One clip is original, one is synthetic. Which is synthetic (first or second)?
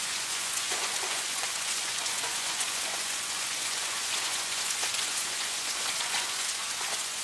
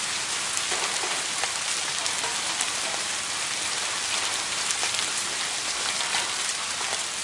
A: first